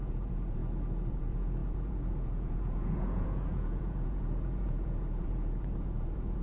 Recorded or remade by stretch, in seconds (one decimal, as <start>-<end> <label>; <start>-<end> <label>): 0.0-0.6 remade; 0.6-1.1 recorded; 1.1-6.4 remade